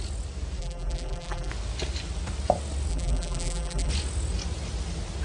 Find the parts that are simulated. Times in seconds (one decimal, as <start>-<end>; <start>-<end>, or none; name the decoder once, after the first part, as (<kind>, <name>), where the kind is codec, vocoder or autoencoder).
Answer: 0.6-1.5 (vocoder, BigVGAN v2); 2.9-3.9